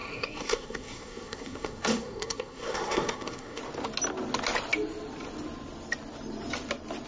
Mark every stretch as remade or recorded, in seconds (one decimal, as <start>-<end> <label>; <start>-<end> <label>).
0.0-3.6 remade; 3.6-7.1 recorded